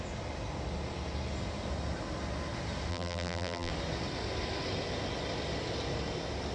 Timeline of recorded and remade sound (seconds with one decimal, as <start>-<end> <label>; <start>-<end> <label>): 0.0-2.9 recorded; 2.9-3.7 remade; 3.7-6.5 recorded